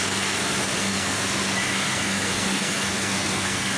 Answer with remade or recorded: remade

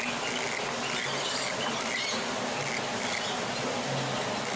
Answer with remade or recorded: recorded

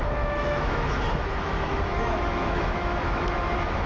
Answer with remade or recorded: remade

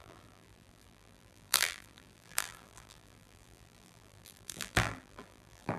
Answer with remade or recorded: remade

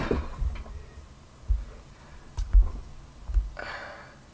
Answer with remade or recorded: recorded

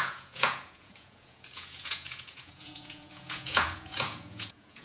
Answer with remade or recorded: remade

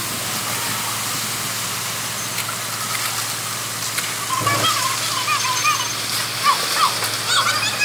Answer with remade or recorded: recorded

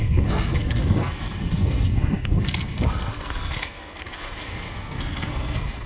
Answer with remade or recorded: remade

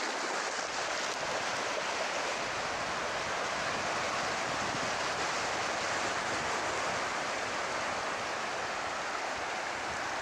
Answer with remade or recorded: recorded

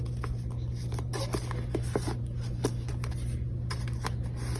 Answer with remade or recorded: recorded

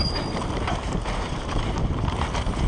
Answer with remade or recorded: recorded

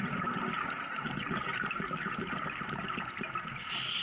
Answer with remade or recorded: recorded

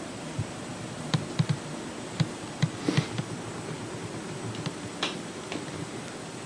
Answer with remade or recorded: remade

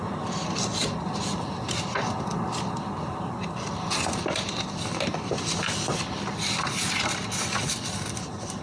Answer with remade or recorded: recorded